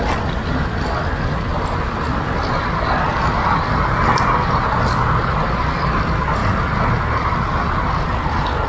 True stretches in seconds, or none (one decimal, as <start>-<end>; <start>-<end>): 0.0-8.7